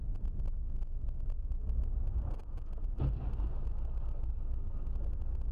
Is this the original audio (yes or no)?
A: yes